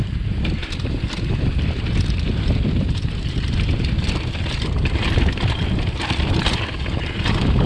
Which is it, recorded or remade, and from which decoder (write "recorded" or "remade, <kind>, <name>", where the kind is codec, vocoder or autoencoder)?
remade, vocoder, BigVGAN v2